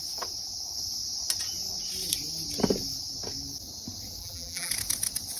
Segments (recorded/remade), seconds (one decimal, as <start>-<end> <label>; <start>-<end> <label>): 0.0-4.2 recorded; 4.2-4.7 remade; 4.7-5.4 recorded